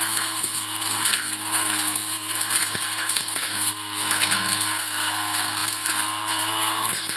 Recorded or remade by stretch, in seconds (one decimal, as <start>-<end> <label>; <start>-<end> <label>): 0.0-7.2 remade